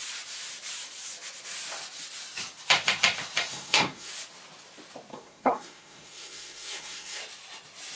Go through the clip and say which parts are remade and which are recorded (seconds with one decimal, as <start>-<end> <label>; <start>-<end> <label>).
0.0-3.5 recorded; 3.5-4.1 remade; 4.1-5.1 recorded; 5.1-7.2 remade; 7.2-8.0 recorded